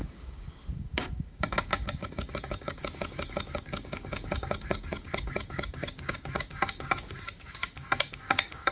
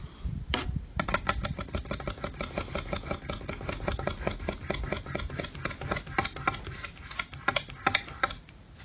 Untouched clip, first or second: second